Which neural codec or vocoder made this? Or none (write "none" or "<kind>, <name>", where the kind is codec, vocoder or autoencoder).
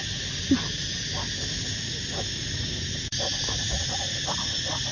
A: none